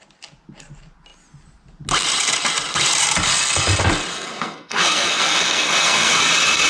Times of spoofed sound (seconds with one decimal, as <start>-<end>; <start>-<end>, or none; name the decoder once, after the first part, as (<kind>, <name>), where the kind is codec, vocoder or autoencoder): 4.1-6.3 (codec, SNAC)